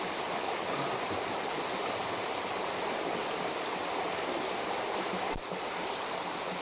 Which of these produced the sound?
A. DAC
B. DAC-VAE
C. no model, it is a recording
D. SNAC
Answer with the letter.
C